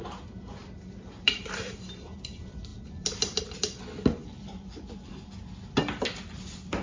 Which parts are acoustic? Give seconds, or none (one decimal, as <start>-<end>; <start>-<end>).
0.0-0.6; 1.4-2.7; 3.4-4.2; 5.1-6.8